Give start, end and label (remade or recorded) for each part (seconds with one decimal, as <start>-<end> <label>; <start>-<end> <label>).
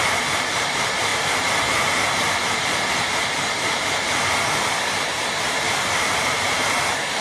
0.0-7.2 remade